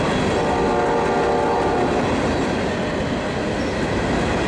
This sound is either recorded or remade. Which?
recorded